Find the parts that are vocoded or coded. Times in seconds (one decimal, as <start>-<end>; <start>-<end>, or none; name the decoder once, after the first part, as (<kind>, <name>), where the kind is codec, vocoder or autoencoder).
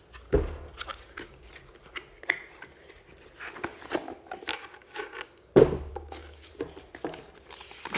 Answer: 0.9-1.5 (codec, DAC); 4.5-5.5; 5.9-6.5